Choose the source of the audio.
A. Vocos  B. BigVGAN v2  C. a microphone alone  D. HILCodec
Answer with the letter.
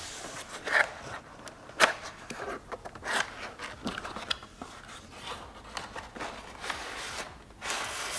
C